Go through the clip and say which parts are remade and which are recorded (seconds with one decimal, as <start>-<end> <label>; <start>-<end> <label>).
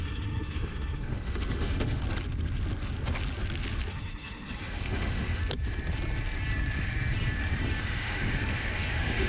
0.0-2.0 remade; 2.0-3.9 recorded; 3.9-5.4 remade; 5.4-7.8 recorded; 7.8-9.3 remade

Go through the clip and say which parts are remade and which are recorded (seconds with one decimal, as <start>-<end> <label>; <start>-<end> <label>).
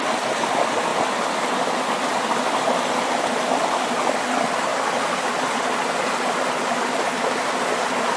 0.0-8.2 recorded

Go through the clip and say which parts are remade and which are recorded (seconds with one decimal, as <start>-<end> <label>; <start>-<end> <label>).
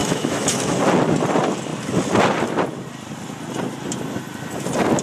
0.0-0.8 remade; 0.8-5.0 recorded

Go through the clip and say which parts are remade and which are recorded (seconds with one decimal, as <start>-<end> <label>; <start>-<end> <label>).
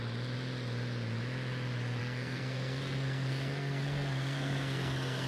0.0-2.0 recorded; 2.0-5.3 remade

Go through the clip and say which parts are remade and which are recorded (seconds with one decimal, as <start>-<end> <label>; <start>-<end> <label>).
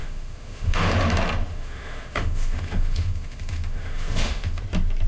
0.0-0.9 remade; 0.9-1.5 recorded; 1.5-4.6 remade; 4.6-5.1 recorded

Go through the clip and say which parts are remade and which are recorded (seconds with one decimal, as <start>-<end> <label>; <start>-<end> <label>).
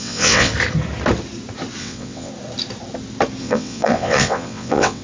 0.0-0.5 remade; 0.5-1.8 recorded; 1.8-2.3 remade; 2.3-3.4 recorded; 3.4-5.0 remade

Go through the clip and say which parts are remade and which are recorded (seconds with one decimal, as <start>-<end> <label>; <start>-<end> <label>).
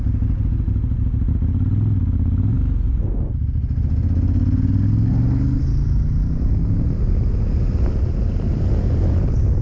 0.0-9.6 recorded